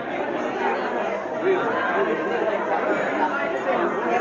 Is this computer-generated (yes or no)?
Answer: no